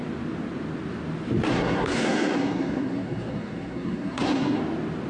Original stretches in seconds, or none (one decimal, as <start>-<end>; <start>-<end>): 0.0-1.5; 4.6-5.1